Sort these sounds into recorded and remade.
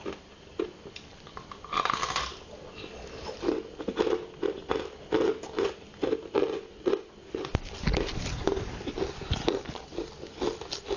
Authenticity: recorded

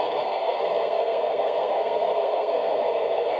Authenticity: remade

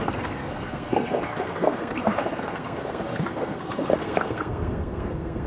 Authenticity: remade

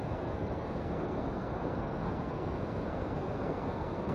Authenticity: remade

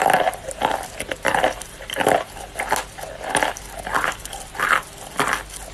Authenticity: recorded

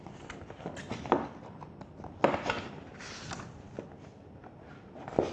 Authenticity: recorded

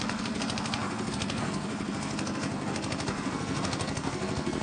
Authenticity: remade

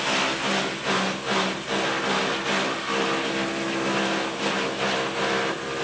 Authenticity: recorded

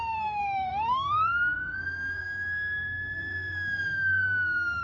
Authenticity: remade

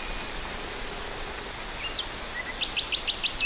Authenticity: recorded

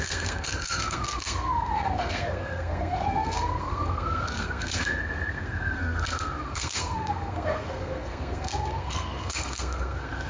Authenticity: remade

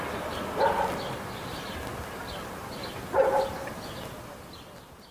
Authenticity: recorded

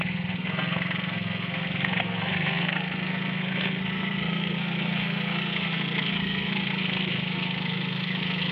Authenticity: remade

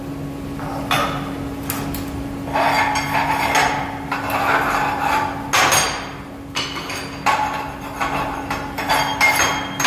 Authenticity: recorded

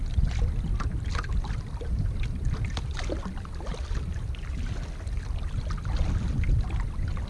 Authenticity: recorded